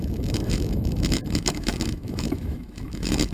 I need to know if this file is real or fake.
fake